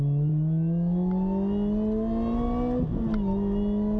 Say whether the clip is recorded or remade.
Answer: recorded